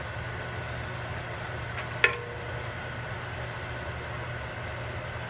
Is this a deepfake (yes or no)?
no